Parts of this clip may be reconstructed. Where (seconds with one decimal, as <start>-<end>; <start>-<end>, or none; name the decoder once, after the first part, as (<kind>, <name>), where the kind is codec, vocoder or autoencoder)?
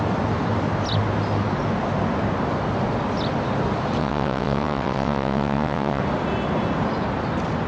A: 4.0-6.0 (vocoder, WaveNeXt)